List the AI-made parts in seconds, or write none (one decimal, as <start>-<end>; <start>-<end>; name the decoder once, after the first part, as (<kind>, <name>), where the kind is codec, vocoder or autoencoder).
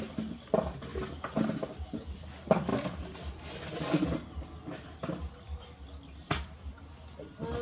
none